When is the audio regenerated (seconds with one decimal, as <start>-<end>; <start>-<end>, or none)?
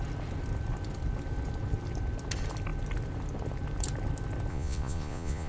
4.5-5.5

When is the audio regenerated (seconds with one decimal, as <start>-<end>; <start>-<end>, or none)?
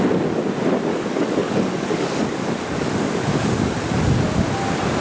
0.9-3.8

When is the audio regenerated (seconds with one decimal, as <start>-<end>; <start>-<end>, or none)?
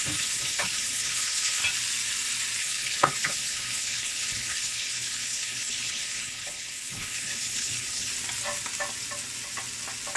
0.0-1.6; 2.6-8.1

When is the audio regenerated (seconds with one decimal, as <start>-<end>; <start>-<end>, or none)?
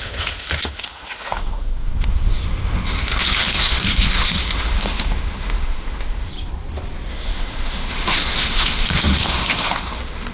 0.0-6.3; 7.1-10.3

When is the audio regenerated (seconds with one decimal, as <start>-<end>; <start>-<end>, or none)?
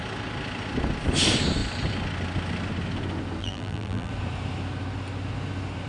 3.4-4.1